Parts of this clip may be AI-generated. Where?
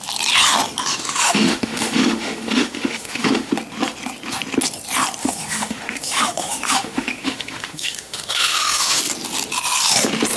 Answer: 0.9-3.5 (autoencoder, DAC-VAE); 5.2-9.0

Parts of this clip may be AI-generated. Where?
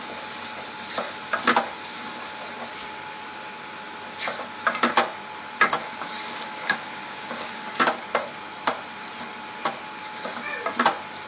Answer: 5.8-7.8 (codec, DAC)